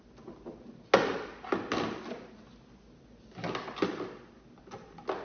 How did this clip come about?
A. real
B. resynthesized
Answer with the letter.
A